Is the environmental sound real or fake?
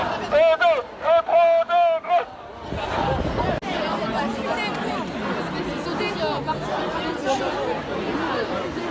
real